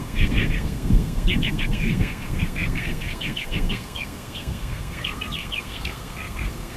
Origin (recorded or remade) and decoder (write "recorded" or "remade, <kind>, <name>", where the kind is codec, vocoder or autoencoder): remade, codec, SNAC